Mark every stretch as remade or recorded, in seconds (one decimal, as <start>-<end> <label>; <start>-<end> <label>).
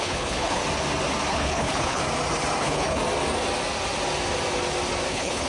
0.0-0.6 remade; 0.6-1.3 recorded; 1.3-2.0 remade; 2.0-2.6 recorded; 2.6-3.0 remade; 3.0-5.1 recorded; 5.1-5.5 remade